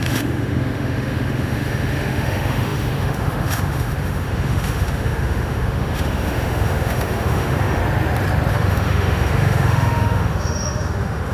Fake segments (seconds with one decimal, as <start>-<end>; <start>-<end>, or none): 0.0-7.8; 8.5-11.3